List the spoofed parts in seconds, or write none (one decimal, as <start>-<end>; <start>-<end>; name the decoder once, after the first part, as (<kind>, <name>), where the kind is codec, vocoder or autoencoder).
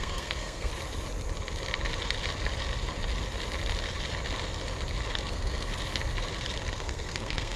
0.0-0.7 (codec, SNAC); 5.3-5.7; 6.7-7.6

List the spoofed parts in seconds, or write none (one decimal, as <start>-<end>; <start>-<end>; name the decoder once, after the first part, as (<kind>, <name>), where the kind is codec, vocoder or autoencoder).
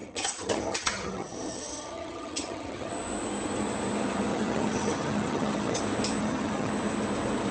0.0-2.9 (vocoder, HiFi-GAN); 4.3-5.8; 6.2-6.7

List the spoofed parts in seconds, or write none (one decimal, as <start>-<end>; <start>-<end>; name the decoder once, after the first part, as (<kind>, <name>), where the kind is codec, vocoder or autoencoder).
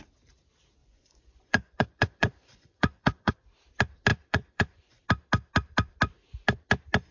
0.8-3.3 (vocoder, Vocos); 4.1-5.0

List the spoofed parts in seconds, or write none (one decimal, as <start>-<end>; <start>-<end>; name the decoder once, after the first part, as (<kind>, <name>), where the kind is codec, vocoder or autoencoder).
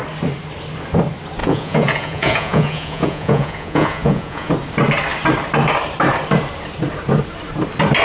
1.4-4.5 (vocoder, Vocos)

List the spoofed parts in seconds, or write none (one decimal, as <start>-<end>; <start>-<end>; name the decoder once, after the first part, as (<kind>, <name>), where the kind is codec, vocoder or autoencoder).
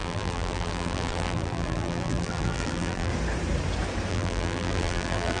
0.0-3.1 (vocoder, BigVGAN v2); 4.1-5.4